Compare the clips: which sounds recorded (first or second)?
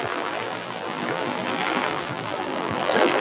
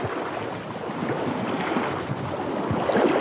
second